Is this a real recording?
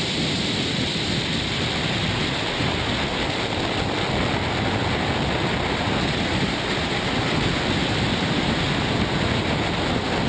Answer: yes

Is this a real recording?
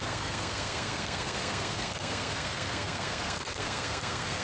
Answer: no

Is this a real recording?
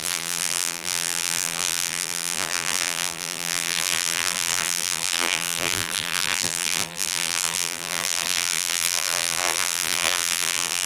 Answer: no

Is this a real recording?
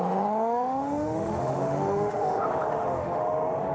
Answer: no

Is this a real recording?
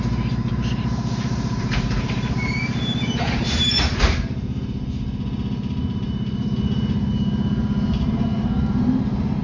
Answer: no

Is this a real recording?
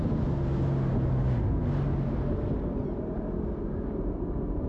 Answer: yes